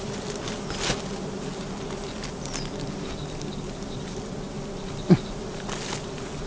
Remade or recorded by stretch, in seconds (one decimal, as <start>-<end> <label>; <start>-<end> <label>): 0.0-6.5 recorded